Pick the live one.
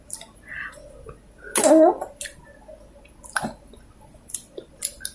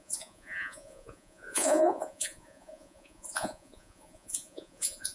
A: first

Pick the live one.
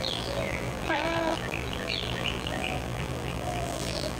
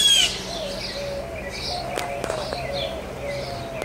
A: second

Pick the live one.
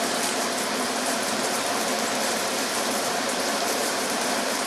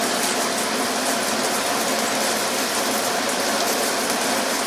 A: second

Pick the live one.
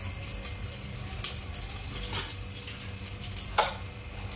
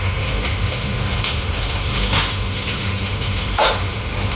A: first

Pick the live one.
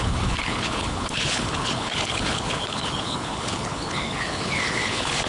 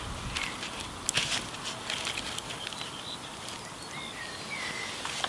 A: second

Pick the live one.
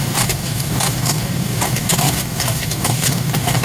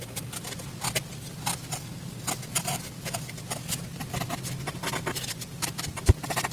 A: second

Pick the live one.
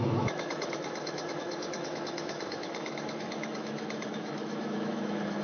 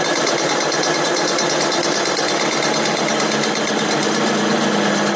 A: second